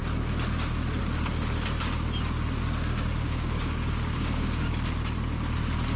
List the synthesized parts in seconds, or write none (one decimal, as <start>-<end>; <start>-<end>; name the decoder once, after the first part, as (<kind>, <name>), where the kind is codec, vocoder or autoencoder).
2.9-4.7 (codec, DAC)